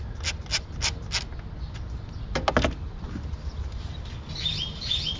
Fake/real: real